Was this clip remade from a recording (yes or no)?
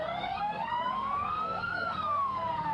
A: yes